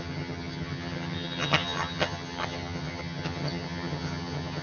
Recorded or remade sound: remade